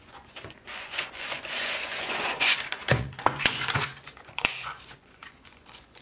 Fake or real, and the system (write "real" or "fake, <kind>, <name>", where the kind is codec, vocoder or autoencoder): fake, vocoder, Vocos